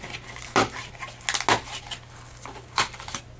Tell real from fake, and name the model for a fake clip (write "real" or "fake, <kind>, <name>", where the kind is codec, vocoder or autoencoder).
real